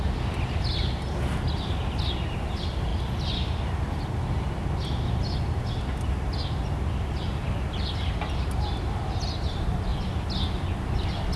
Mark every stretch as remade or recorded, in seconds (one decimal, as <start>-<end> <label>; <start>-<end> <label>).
0.0-11.4 recorded

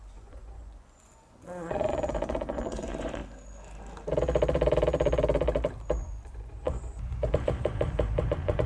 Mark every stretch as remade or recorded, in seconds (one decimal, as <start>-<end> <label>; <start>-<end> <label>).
0.0-3.2 remade; 3.2-6.0 recorded; 6.0-8.7 remade